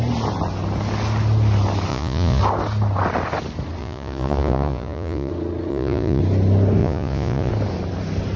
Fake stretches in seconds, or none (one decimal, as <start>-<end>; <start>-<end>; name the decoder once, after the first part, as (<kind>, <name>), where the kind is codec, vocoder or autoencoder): 1.9-2.4 (vocoder, Vocos); 3.8-5.3; 5.7-6.2; 6.8-7.5